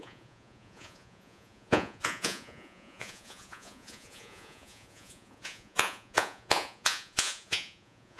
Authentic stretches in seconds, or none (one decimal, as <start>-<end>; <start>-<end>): none